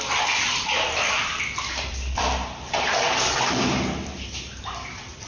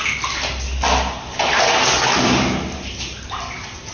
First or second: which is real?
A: second